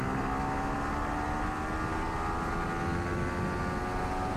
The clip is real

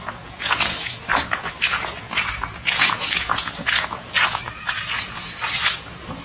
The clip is fake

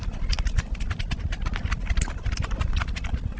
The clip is real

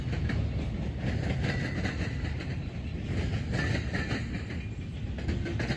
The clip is real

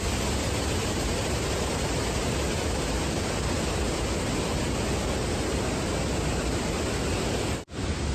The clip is real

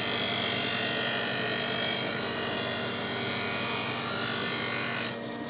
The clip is real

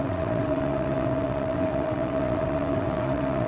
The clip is fake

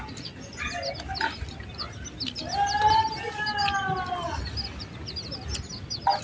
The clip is real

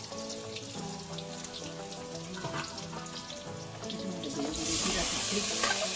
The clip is real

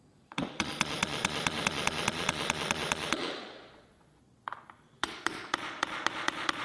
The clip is fake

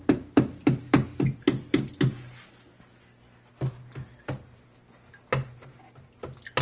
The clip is real